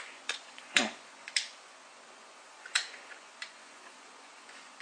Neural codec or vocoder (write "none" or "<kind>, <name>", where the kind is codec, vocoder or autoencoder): vocoder, Vocos